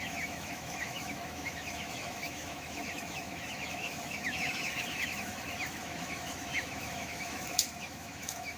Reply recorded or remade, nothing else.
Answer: remade